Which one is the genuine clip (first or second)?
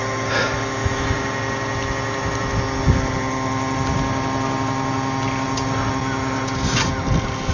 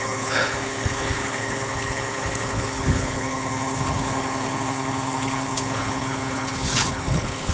first